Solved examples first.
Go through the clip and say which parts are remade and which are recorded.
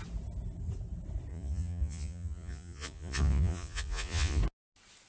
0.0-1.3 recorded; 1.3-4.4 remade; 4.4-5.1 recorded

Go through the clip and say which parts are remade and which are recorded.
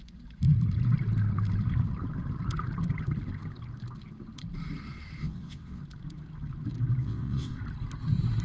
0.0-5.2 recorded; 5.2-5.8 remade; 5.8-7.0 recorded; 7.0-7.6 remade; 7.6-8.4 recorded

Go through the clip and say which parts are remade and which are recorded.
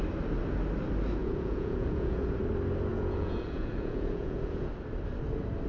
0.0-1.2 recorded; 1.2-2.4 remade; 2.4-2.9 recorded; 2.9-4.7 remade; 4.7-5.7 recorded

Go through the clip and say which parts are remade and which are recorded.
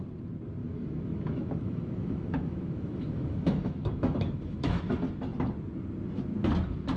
0.0-0.6 recorded; 0.6-4.8 remade; 4.8-7.0 recorded